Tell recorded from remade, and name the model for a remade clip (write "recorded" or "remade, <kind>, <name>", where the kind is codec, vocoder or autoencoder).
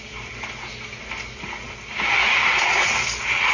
recorded